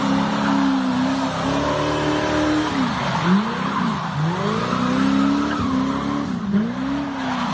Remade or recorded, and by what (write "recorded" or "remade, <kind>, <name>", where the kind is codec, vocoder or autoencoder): recorded